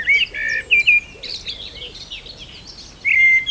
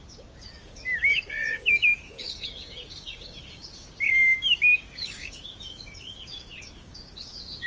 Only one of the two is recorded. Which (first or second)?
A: first